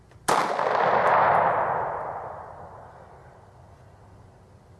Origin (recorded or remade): recorded